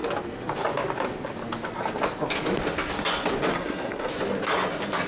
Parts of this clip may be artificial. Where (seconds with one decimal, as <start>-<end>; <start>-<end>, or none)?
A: 3.5-4.1